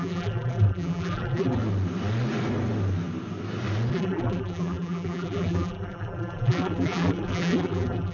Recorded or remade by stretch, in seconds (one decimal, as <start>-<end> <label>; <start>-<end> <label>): 0.0-1.6 remade; 1.6-3.9 recorded; 3.9-8.1 remade